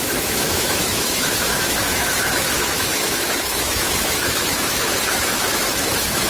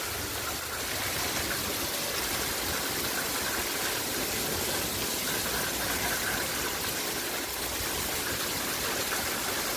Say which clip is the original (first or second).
second